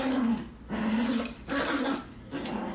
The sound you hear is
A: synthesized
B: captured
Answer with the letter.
B